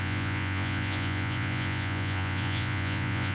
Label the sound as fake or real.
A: fake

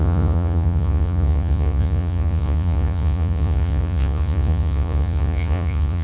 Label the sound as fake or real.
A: fake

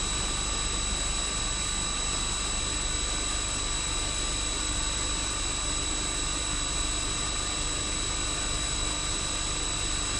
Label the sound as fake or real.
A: real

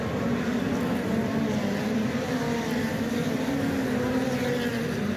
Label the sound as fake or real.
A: real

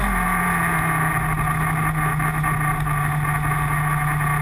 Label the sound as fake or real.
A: real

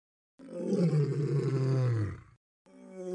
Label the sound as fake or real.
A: real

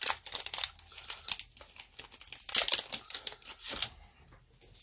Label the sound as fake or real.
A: real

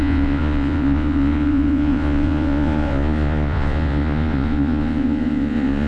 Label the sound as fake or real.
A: fake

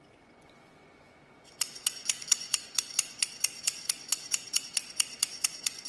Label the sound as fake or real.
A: fake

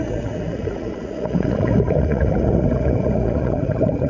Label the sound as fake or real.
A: fake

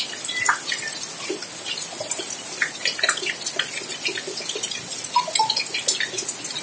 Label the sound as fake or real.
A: real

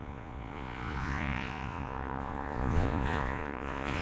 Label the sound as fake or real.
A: fake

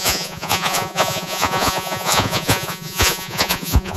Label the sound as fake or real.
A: fake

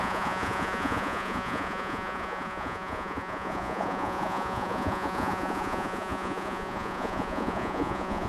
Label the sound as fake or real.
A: fake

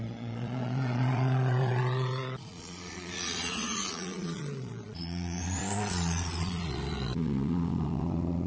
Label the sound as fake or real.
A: fake